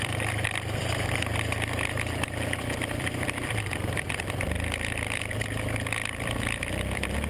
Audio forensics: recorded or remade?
remade